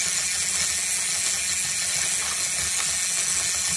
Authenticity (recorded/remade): recorded